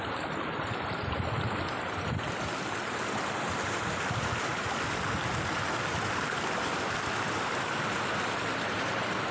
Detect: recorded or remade recorded